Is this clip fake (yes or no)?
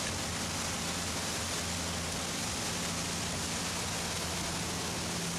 no